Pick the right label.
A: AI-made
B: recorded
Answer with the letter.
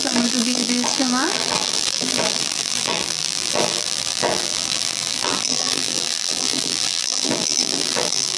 A